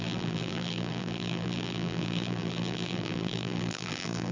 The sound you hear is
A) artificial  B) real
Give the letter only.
A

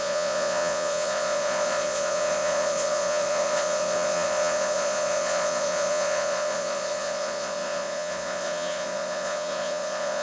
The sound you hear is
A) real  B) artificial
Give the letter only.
B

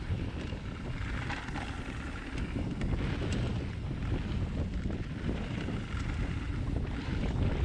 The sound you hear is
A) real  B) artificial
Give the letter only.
A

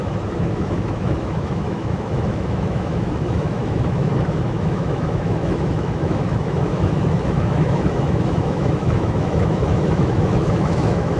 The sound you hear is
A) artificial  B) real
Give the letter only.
A